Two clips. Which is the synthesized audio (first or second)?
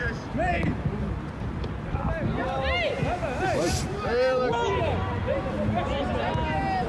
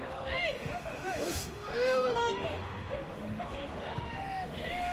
second